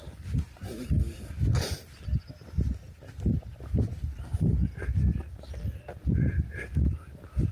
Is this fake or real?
real